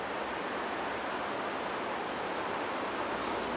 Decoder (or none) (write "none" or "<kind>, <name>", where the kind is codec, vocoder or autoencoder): none